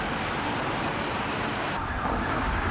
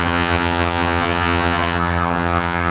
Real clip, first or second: first